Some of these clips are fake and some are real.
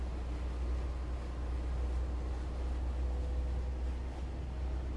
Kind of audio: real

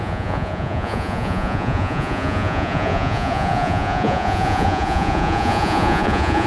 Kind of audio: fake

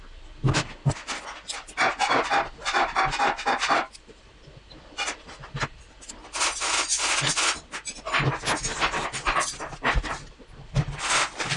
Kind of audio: real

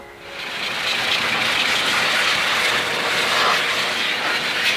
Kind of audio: real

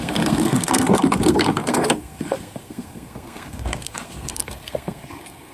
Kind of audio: fake